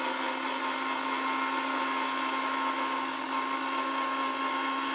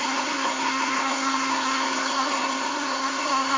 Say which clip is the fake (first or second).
second